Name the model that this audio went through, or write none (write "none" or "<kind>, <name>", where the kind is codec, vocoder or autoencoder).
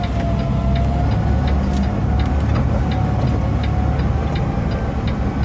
none